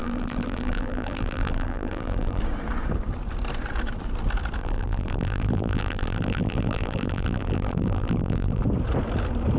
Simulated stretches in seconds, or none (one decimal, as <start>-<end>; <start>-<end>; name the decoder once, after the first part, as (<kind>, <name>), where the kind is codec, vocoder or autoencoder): 0.0-2.4 (vocoder, BigVGAN v2); 4.6-8.6